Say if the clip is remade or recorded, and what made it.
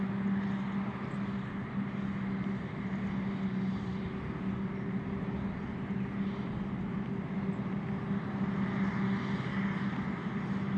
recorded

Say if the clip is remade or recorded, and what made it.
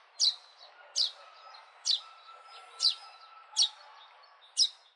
recorded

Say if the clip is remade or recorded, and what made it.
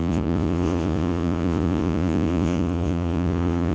remade, vocoder, Vocos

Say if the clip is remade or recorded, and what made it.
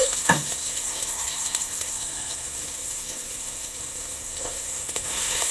remade, codec, SNAC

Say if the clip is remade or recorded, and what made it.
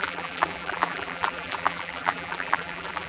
remade, vocoder, BigVGAN v2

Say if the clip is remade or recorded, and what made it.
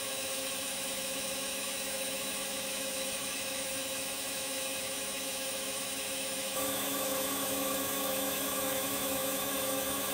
remade, autoencoder, DAC-VAE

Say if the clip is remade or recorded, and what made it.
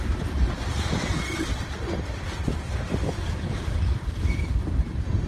remade, vocoder, BigVGAN v2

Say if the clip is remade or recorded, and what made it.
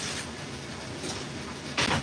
recorded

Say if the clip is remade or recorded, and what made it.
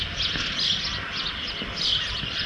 recorded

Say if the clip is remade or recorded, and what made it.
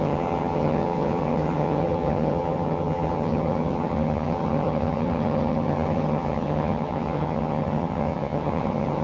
remade, vocoder, HiFi-GAN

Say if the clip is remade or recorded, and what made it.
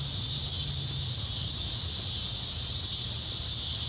recorded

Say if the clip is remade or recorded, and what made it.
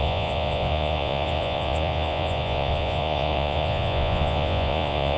remade, vocoder, Vocos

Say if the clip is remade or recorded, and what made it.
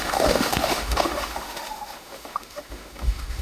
remade, autoencoder, DAC-VAE